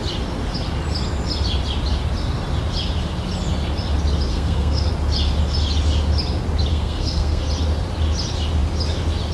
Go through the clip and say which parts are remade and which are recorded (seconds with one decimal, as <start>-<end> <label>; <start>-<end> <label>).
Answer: 0.0-4.3 recorded; 4.3-4.9 remade; 4.9-6.7 recorded; 6.7-7.4 remade; 7.4-9.3 recorded